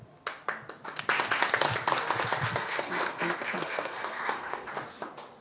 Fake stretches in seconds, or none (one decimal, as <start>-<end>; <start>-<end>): 2.5-4.7